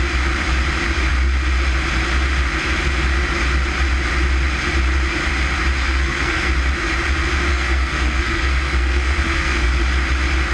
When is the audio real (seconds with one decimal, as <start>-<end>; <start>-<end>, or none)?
0.0-5.8; 6.5-7.5; 9.8-10.5